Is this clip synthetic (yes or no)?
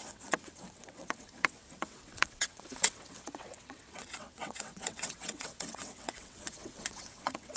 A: yes